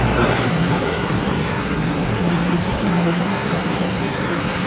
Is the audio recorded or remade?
remade